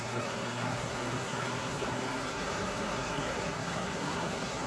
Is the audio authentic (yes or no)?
no